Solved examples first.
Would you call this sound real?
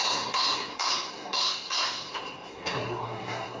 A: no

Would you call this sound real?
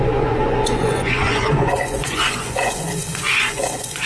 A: no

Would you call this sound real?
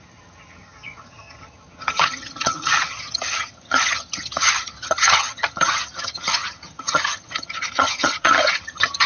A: no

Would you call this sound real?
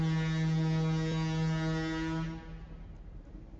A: yes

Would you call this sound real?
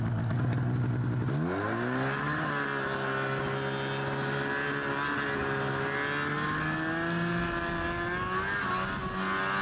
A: yes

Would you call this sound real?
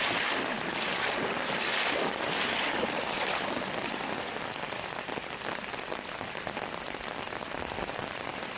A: yes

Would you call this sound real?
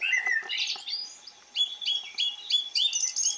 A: yes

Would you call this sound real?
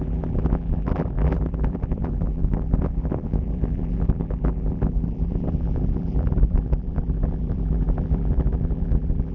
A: no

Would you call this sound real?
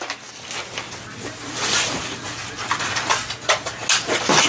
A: yes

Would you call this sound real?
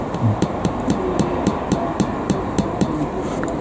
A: yes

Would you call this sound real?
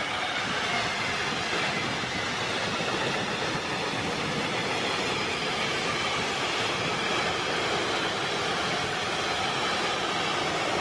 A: yes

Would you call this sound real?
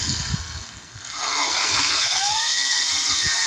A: no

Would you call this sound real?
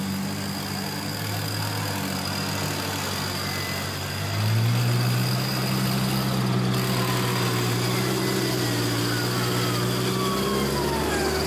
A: yes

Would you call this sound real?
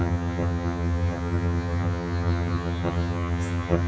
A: no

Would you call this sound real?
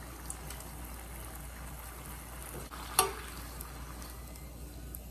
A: yes